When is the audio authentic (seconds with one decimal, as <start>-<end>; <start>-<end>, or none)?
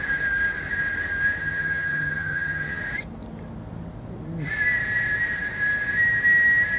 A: 0.0-1.4; 2.8-6.8